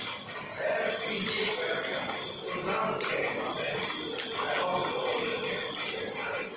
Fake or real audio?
real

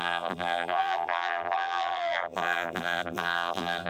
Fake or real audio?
fake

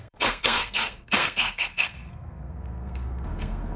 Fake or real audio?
fake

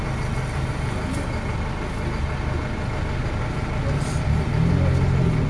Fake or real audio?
real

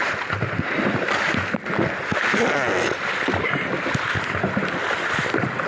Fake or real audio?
real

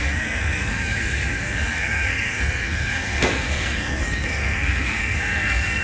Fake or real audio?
fake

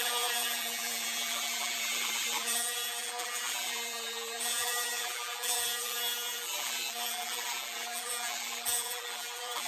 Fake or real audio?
fake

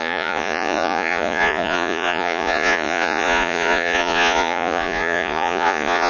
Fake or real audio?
fake